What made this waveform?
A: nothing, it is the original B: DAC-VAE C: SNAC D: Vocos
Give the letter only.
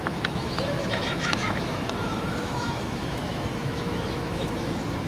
B